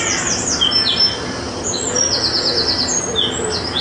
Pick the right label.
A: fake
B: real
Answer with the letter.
B